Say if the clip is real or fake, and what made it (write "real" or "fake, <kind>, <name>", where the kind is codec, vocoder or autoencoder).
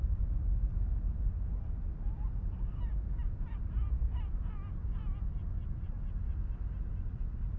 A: real